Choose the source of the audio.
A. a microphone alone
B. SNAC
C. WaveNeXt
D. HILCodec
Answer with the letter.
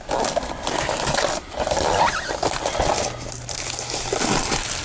A